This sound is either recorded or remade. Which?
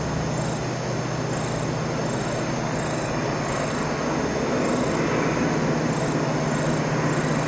recorded